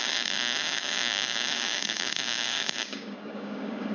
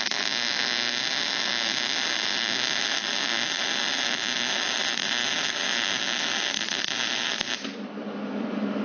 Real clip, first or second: second